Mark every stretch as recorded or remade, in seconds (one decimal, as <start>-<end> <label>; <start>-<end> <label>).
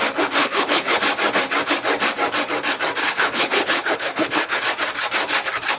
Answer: 0.0-0.4 recorded; 0.4-1.0 remade; 1.0-3.0 recorded; 3.0-4.6 remade; 4.6-5.8 recorded